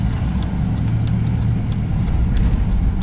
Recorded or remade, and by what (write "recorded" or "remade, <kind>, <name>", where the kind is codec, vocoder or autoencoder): recorded